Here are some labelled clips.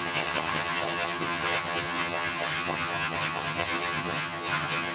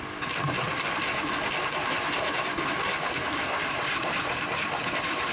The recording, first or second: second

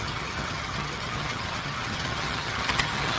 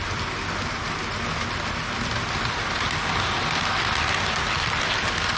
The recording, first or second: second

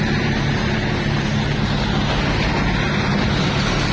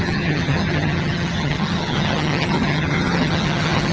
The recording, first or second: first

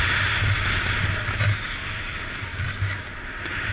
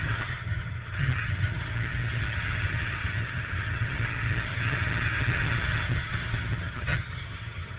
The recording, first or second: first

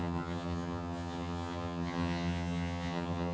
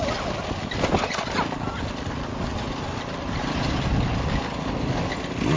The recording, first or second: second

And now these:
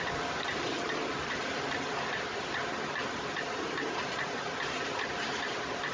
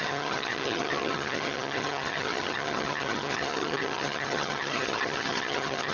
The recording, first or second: first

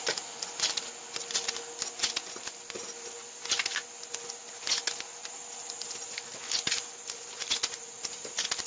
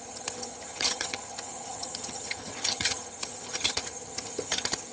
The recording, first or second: first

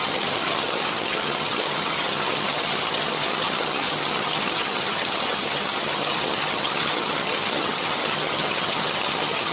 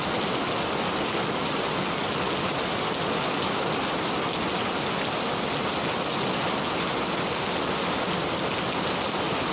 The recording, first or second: second